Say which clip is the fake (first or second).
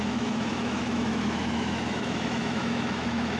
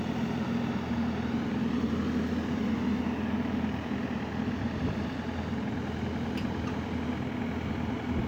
first